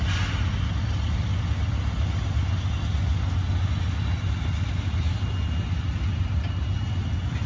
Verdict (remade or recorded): recorded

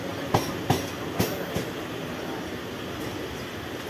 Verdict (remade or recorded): recorded